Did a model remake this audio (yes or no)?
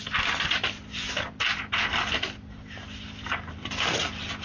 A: no